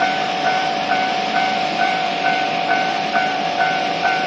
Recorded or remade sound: remade